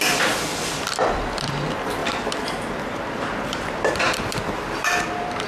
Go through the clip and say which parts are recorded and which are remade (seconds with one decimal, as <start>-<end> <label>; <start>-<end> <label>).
0.0-2.0 remade; 2.0-3.9 recorded; 3.9-5.5 remade